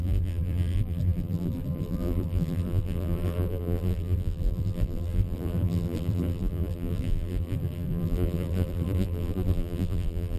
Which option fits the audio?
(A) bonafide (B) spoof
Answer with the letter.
B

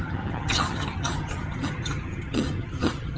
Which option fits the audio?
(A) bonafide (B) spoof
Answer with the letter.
B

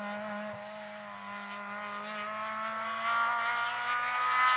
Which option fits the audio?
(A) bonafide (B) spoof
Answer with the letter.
A